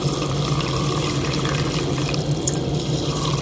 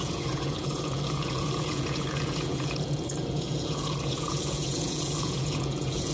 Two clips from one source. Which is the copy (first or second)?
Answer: second